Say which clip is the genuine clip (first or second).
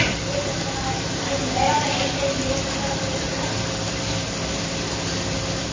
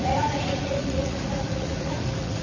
first